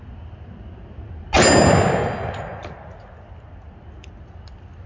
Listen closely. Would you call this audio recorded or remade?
recorded